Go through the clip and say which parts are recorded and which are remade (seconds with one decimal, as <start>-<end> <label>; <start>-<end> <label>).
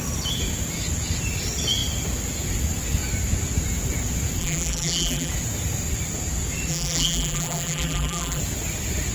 0.0-4.4 recorded; 4.4-5.3 remade; 5.3-6.7 recorded; 6.7-8.4 remade; 8.4-9.1 recorded